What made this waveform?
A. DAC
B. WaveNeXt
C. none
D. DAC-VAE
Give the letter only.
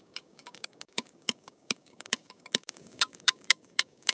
A